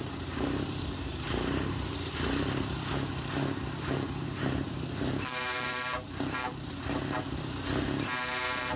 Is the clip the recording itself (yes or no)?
no